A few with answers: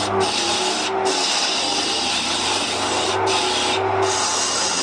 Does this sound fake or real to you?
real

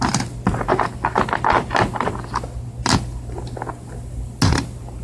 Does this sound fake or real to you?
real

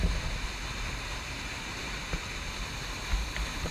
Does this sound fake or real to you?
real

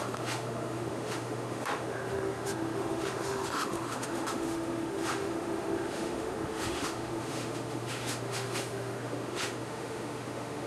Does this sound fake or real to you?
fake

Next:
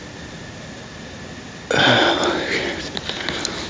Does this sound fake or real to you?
real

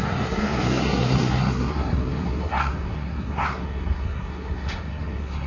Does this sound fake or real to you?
fake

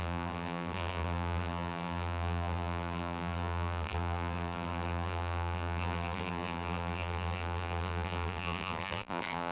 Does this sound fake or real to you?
fake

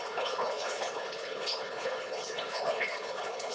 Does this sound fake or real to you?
fake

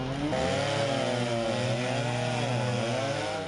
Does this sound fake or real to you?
real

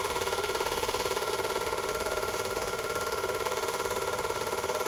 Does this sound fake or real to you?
fake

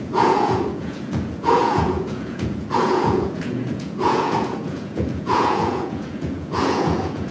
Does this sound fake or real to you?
fake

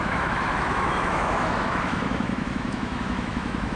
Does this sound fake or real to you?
fake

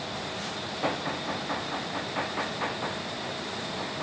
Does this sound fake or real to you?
real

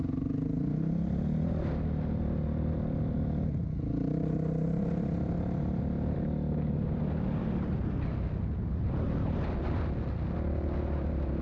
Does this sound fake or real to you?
real